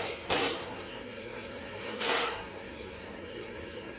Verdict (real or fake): fake